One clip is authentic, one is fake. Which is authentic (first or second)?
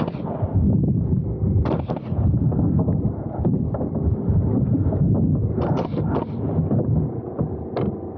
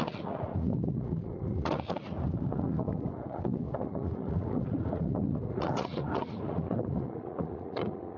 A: first